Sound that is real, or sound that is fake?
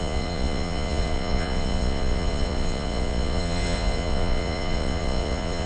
fake